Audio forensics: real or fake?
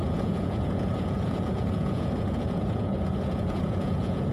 fake